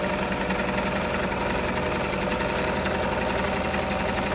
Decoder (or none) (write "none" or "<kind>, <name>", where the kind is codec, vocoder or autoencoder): none